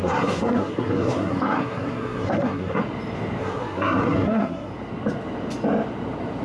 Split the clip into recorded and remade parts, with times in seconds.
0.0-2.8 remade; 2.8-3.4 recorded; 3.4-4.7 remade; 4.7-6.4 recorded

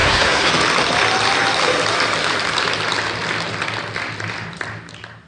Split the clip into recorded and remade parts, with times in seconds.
0.0-0.5 remade; 0.5-5.3 recorded

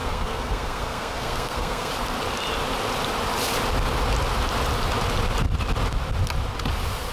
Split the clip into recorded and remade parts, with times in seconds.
0.0-1.9 remade; 1.9-7.1 recorded

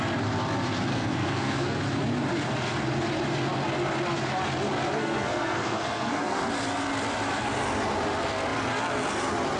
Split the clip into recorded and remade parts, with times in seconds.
0.0-0.9 recorded; 0.9-1.8 remade; 1.8-5.0 recorded; 5.0-6.5 remade; 6.5-9.6 recorded

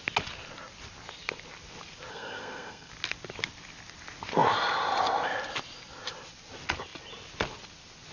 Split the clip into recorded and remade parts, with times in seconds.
0.0-2.1 recorded; 2.1-2.9 remade; 2.9-8.1 recorded

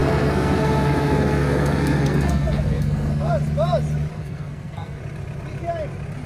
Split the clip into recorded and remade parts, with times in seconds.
0.0-3.3 remade; 3.3-4.1 recorded; 4.1-5.0 remade; 5.0-6.3 recorded